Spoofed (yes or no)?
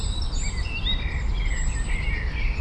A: no